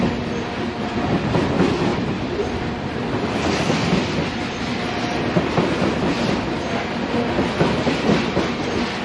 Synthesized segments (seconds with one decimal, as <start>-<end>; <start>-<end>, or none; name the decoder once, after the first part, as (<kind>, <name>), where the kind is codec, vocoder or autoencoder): 1.9-2.6 (vocoder, BigVGAN v2)